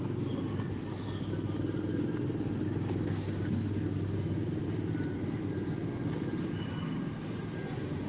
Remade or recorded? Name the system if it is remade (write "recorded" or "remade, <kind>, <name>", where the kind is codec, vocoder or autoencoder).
recorded